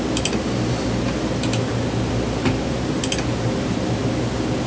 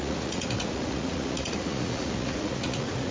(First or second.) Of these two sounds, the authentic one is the first